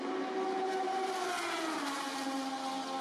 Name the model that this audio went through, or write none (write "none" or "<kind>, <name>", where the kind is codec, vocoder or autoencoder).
none